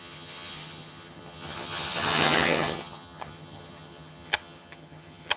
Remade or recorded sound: remade